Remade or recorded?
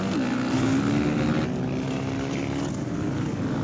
recorded